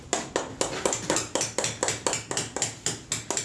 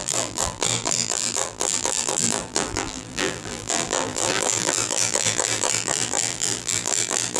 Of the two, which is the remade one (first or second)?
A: second